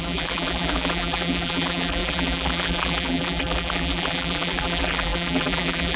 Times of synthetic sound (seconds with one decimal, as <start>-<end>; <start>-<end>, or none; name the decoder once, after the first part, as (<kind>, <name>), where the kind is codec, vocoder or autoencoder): 0.0-6.0 (vocoder, BigVGAN v2)